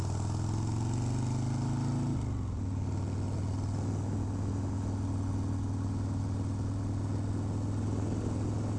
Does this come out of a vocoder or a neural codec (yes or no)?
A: no